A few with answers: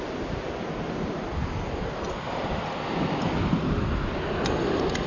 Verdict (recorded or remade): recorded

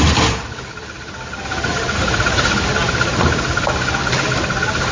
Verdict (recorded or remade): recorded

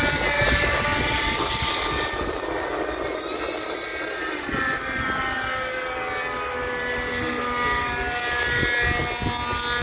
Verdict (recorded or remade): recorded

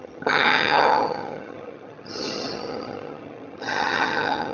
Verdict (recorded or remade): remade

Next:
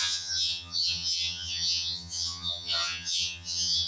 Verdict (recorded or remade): remade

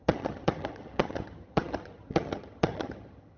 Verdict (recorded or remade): remade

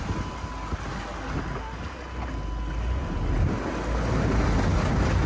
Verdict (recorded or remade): recorded